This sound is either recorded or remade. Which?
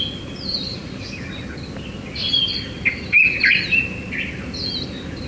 recorded